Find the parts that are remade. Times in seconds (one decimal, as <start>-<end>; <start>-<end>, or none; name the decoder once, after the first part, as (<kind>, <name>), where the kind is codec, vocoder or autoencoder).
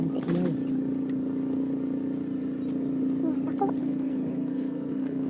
3.8-5.3 (codec, SNAC)